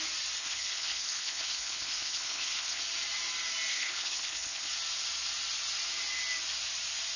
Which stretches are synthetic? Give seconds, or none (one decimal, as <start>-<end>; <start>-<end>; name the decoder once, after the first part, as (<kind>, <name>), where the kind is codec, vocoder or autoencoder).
0.4-2.8 (codec, HILCodec); 3.7-4.7